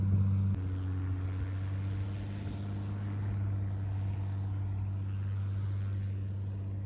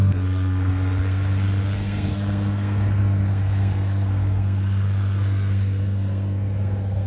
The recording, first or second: first